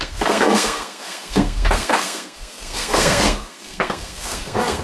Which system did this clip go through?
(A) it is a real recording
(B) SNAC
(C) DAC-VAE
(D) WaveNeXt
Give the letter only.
B